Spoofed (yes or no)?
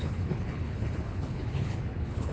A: yes